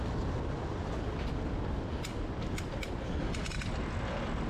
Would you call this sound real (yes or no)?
yes